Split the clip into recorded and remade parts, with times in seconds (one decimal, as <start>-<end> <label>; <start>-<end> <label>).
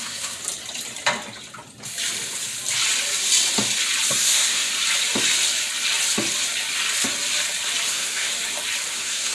0.0-0.4 remade; 0.4-4.1 recorded; 4.1-4.7 remade; 4.7-7.9 recorded; 7.9-8.3 remade; 8.3-8.9 recorded; 8.9-9.3 remade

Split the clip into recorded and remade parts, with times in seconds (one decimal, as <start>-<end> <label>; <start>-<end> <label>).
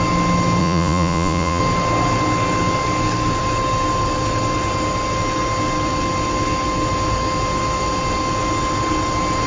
0.0-0.6 recorded; 0.6-1.6 remade; 1.6-9.5 recorded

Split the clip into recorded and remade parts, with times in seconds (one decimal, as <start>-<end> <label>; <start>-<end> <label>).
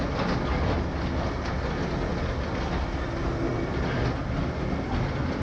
0.0-5.4 recorded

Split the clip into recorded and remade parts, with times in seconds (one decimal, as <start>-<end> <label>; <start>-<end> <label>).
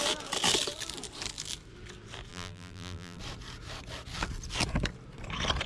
0.0-2.3 recorded; 2.3-3.2 remade; 3.2-5.7 recorded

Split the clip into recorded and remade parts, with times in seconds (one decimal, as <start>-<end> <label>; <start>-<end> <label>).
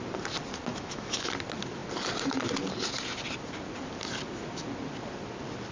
0.0-0.7 recorded; 0.7-1.3 remade; 1.3-5.7 recorded